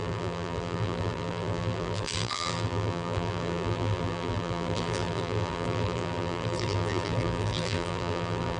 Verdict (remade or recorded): remade